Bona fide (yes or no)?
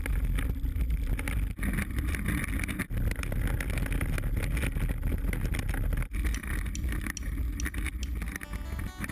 yes